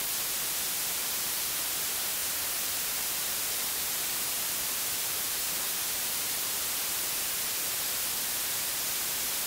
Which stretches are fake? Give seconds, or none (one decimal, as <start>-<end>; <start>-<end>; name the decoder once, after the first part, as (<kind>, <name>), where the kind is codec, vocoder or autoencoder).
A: 2.2-6.6 (vocoder, BigVGAN v2)